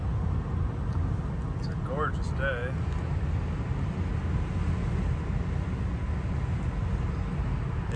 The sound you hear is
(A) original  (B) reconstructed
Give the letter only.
A